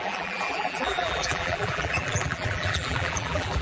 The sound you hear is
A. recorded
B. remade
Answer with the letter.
B